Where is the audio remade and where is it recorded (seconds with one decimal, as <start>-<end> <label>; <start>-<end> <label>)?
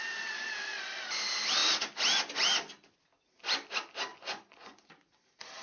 0.0-4.1 recorded; 4.1-4.8 remade; 4.8-5.6 recorded